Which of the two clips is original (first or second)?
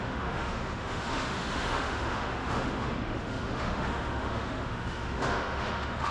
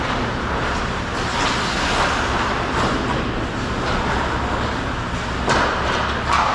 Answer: second